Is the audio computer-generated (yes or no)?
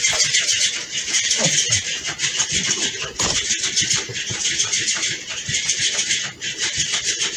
yes